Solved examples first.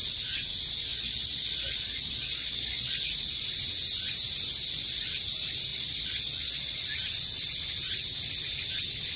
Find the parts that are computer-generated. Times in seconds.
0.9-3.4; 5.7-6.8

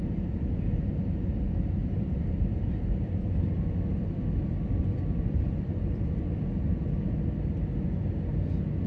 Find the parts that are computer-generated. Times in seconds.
1.8-6.3

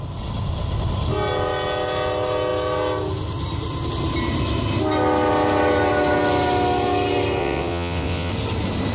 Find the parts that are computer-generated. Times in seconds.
7.4-8.3

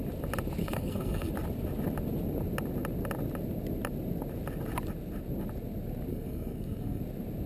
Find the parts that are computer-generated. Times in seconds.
0.6-1.3; 6.1-7.0